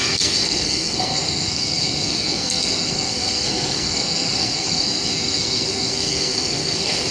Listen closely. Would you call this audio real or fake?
fake